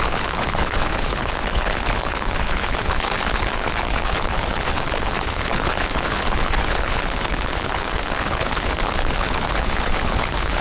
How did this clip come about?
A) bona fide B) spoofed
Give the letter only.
B